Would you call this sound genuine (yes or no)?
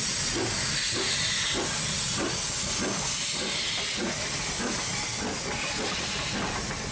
yes